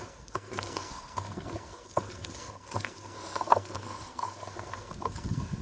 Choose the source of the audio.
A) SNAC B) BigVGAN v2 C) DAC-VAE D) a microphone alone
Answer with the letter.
A